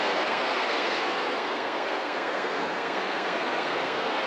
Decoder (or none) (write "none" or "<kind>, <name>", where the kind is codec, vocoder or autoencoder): codec, SNAC